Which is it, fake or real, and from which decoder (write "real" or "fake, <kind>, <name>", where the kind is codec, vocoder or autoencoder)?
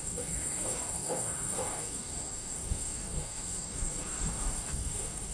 fake, codec, DAC